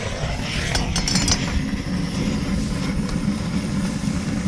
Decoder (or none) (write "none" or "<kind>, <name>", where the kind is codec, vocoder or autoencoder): none